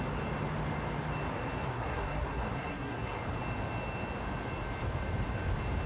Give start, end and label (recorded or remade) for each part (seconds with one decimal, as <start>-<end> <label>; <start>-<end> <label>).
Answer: 0.0-1.7 recorded; 1.7-3.2 remade; 3.2-5.9 recorded